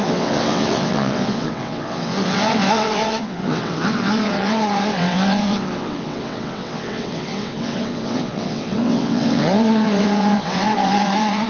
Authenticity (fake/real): fake